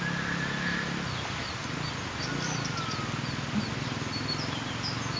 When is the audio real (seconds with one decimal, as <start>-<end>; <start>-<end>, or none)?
0.0-5.2